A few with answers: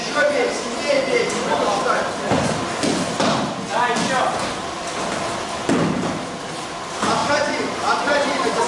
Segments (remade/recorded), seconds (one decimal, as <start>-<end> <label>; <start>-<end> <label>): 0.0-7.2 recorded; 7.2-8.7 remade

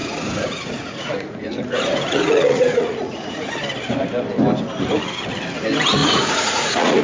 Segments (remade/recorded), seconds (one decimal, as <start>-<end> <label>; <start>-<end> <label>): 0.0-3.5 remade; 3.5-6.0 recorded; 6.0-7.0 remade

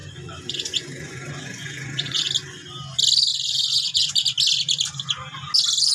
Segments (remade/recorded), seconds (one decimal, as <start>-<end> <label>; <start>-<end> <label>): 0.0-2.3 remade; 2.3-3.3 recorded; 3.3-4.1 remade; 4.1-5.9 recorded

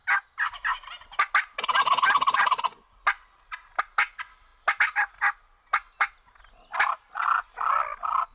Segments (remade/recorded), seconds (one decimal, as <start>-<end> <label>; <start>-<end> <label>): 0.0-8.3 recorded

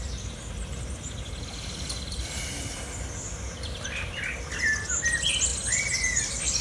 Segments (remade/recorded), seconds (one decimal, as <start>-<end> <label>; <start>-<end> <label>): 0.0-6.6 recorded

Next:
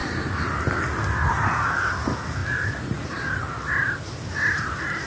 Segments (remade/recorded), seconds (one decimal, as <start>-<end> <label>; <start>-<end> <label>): 0.0-5.1 recorded